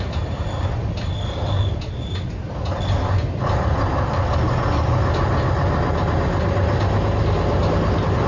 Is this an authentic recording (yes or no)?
yes